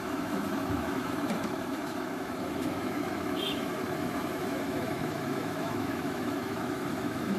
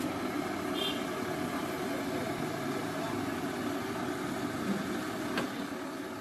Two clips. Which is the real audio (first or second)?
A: second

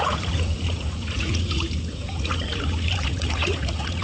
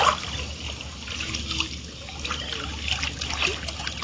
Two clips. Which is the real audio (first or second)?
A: second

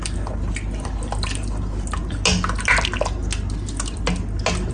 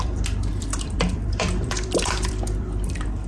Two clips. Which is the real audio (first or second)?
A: first